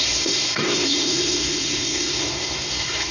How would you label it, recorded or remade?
remade